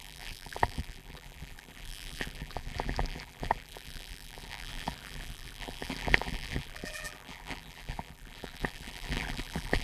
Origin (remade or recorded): remade